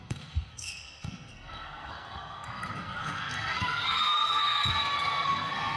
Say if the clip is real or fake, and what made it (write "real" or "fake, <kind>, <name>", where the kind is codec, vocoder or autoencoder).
fake, codec, SNAC